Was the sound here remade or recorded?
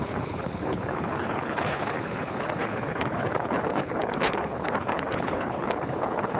remade